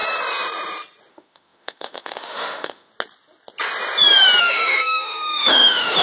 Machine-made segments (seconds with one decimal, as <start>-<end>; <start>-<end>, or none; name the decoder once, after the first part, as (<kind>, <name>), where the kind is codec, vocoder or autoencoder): 1.1-2.9 (autoencoder, DAC-VAE); 4.4-6.0